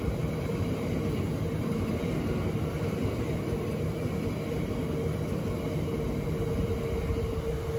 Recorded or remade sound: recorded